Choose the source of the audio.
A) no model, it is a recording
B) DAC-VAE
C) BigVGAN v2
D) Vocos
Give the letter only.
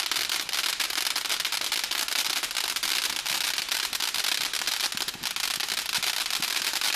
A